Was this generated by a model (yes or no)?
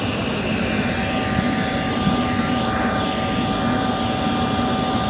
no